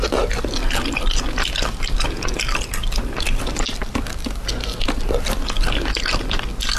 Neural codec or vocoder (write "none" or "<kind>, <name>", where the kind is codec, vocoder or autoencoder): none